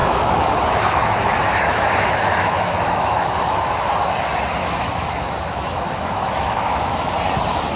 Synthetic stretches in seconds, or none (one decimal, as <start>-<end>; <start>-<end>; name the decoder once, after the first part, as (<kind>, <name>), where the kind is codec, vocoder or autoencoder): 0.0-3.9 (autoencoder, DAC-VAE); 4.6-7.1